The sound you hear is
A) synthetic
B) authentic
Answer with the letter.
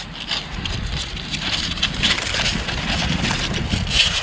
B